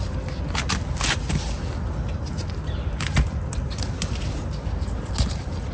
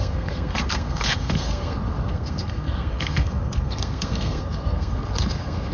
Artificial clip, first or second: second